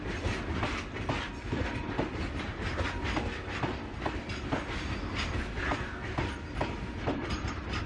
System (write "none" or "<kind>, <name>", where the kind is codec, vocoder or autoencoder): none